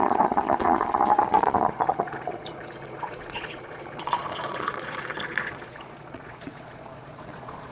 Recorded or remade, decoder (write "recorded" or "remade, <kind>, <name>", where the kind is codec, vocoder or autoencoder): remade, vocoder, Vocos